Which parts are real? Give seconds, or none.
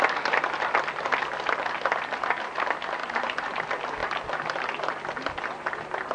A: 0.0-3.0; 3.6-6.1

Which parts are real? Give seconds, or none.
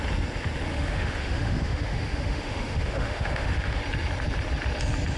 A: 0.0-0.7; 3.8-5.2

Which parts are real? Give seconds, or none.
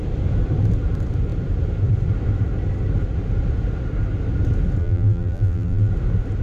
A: 0.0-4.8; 5.9-6.4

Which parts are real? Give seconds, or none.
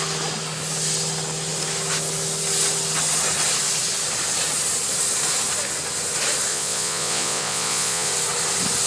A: 0.0-6.5; 8.1-8.9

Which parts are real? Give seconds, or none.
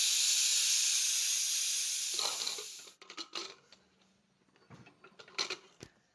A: 0.0-6.1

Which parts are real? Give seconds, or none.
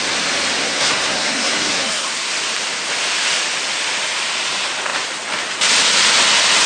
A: 0.0-0.6; 2.3-6.7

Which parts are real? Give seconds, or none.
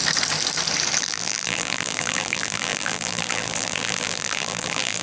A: 0.0-1.0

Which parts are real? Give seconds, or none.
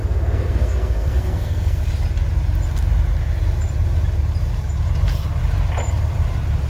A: 1.8-6.7